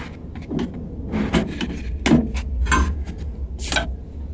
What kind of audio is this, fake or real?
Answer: real